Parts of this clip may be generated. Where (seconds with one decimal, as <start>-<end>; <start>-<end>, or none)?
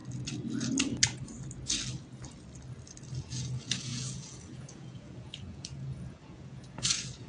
3.2-7.3